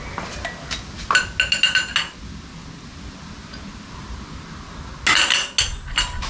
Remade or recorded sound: recorded